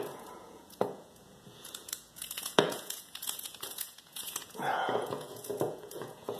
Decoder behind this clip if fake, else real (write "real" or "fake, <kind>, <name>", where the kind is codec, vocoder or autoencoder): fake, vocoder, Vocos